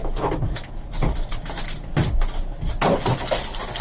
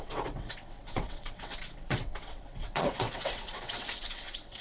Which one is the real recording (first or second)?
first